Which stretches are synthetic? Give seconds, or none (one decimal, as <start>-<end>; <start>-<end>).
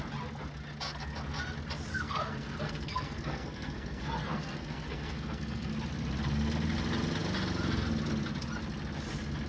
1.9-5.7